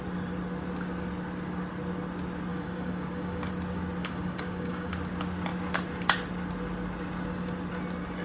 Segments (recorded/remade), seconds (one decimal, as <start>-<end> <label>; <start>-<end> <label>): 0.0-2.5 recorded; 2.5-3.5 remade; 3.5-4.0 recorded; 4.0-4.9 remade; 4.9-8.2 recorded